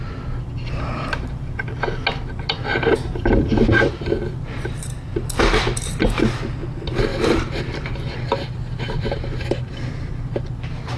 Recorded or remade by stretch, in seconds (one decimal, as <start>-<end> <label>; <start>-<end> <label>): 0.0-2.7 recorded; 2.7-6.4 remade; 6.4-7.1 recorded; 7.1-9.8 remade; 9.8-11.0 recorded